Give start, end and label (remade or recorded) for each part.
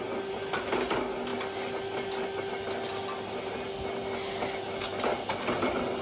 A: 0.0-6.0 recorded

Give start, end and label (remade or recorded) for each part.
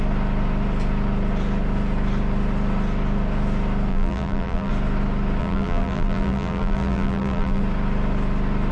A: 0.0-3.9 recorded; 3.9-4.7 remade; 4.7-5.4 recorded; 5.4-7.6 remade; 7.6-8.7 recorded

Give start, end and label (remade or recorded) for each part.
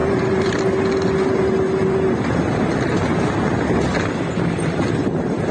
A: 0.0-0.6 remade; 0.6-5.5 recorded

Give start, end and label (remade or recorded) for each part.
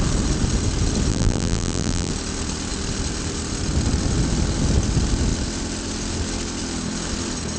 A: 0.0-1.1 recorded; 1.1-2.1 remade; 2.1-7.6 recorded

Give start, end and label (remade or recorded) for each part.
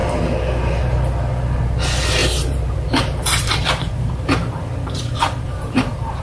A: 0.0-2.2 recorded; 2.2-6.2 remade